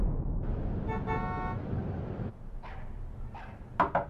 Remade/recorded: recorded